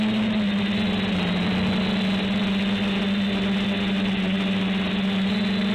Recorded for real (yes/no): yes